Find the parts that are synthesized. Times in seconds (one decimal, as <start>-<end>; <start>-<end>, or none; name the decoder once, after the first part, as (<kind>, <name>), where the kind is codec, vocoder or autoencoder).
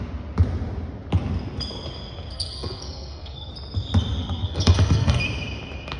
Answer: 2.3-3.5 (codec, SNAC); 4.2-5.2